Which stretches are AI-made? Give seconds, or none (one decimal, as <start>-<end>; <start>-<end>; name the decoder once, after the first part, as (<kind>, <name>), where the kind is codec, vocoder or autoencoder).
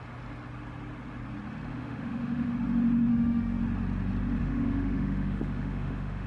1.7-2.5 (autoencoder, DAC-VAE); 3.1-3.6; 4.4-6.3